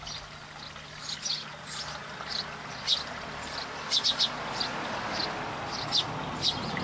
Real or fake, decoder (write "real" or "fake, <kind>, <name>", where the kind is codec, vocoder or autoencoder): real